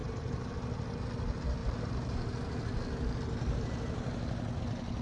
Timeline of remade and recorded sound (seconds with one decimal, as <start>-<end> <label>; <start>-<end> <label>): 0.0-0.5 remade; 0.5-5.0 recorded